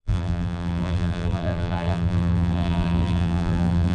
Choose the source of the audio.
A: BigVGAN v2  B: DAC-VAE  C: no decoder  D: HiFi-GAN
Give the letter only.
A